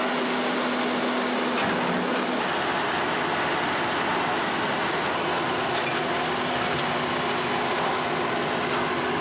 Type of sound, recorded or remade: recorded